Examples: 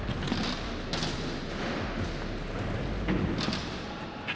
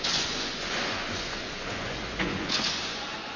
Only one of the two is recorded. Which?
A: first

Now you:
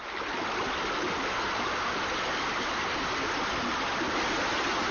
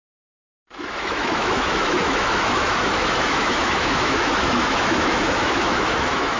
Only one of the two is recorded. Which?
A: first